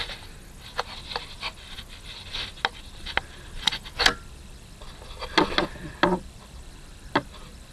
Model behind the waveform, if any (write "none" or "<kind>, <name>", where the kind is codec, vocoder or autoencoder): none